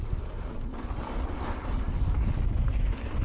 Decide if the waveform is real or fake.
real